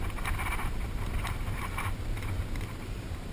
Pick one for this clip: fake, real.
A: fake